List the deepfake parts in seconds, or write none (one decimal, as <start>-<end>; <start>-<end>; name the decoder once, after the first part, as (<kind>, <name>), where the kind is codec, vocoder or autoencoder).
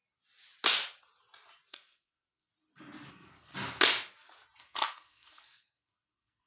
1.7-2.5 (codec, SNAC); 3.1-3.5; 4.6-6.5